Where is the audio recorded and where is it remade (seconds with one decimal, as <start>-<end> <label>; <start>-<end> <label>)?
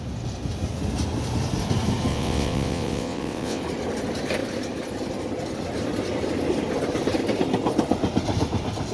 0.0-2.1 recorded; 2.1-3.6 remade; 3.6-8.9 recorded